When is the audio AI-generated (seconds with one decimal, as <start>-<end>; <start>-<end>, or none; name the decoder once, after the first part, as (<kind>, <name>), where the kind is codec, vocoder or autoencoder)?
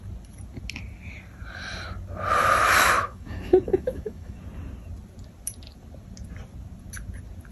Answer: 2.6-4.4 (autoencoder, DAC-VAE)